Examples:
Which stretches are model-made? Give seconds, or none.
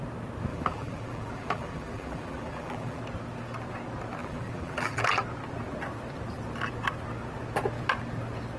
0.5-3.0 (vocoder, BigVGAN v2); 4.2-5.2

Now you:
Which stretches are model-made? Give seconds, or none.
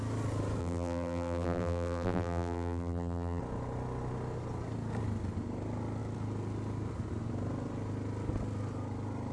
0.6-3.4 (vocoder, BigVGAN v2)